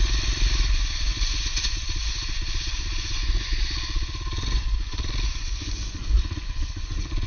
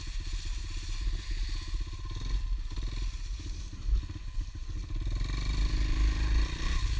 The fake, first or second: first